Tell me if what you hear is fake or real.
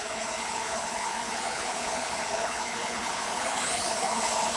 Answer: fake